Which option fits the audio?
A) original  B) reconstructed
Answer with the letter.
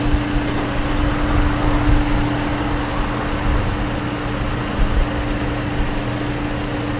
A